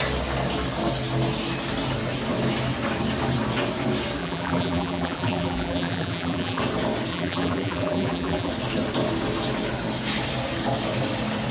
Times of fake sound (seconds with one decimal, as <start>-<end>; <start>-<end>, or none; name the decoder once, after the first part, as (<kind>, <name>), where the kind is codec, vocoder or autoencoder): 4.2-6.6 (vocoder, BigVGAN v2); 7.1-8.5